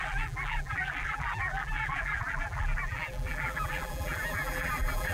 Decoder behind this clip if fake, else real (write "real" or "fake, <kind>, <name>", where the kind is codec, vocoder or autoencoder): fake, vocoder, BigVGAN v2